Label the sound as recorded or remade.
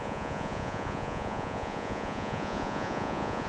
remade